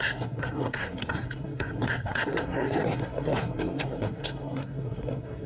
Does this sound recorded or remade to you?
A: remade